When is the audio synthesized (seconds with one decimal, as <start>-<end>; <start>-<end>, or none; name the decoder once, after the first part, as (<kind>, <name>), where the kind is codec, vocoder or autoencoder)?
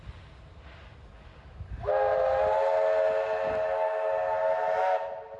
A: none